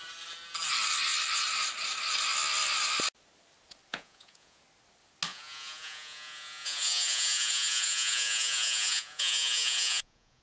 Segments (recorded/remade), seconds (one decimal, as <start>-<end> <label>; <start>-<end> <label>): 0.0-3.9 recorded; 3.9-4.6 remade; 4.6-5.3 recorded; 5.3-10.4 remade